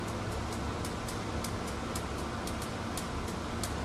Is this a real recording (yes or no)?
yes